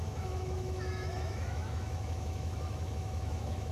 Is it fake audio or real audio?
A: fake